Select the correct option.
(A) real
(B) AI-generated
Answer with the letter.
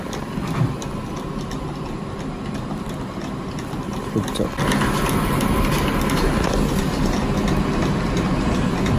A